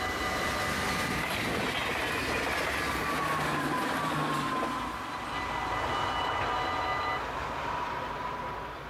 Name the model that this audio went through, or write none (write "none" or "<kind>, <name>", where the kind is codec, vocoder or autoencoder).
none